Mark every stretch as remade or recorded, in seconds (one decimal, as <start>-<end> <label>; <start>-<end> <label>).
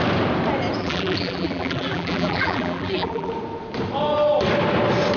0.0-0.8 recorded; 0.8-3.3 remade; 3.3-5.2 recorded